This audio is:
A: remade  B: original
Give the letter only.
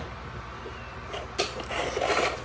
B